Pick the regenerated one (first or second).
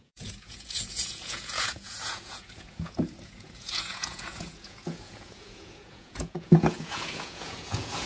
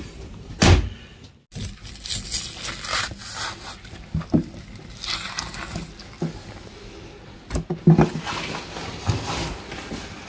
first